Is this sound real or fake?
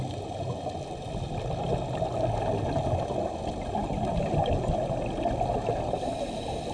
real